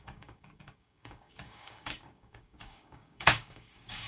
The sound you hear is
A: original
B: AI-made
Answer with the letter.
B